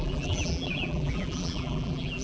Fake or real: fake